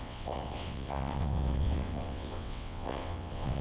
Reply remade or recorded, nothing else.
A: remade